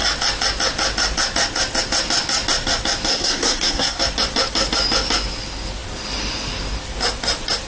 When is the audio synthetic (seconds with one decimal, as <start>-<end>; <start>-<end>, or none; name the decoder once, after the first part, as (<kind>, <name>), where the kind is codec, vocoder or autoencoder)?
3.1-4.0 (codec, SNAC)

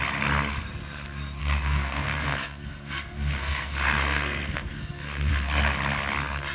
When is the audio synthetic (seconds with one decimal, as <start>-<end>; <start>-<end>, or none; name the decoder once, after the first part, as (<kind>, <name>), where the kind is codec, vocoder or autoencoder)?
1.4-5.3 (codec, SNAC)

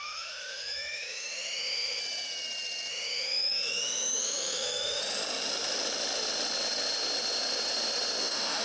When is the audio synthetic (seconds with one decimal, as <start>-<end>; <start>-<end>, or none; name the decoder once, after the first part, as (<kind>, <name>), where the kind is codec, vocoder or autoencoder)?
0.0-2.0 (autoencoder, DAC-VAE); 2.9-5.0; 8.2-8.6

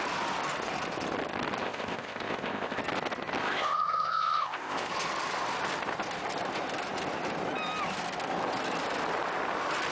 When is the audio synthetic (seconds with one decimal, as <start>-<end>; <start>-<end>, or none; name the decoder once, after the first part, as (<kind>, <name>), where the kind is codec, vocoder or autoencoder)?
1.6-2.8 (codec, ZipCodec); 3.4-4.9

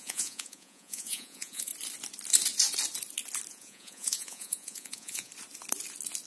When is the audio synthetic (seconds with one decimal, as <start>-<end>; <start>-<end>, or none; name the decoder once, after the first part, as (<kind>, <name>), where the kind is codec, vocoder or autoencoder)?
0.0-1.7 (vocoder, Vocos); 3.5-5.3

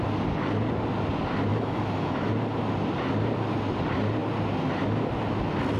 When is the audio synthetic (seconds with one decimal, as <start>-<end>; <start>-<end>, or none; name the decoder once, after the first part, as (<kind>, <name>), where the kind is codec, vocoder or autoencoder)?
1.5-2.3 (autoencoder, DAC-VAE)

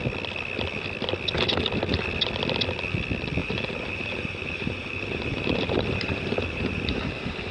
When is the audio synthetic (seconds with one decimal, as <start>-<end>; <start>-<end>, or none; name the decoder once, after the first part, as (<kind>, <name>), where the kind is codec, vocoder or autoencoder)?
3.4-7.5 (vocoder, BigVGAN v2)

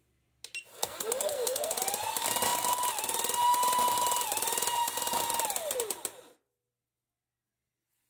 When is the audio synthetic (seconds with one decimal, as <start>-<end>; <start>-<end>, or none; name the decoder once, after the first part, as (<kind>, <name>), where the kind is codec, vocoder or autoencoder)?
0.7-1.8 (codec, SNAC)